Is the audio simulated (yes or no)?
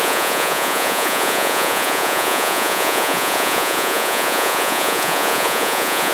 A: yes